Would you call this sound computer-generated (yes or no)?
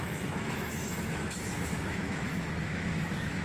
yes